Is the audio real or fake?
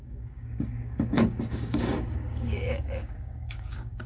fake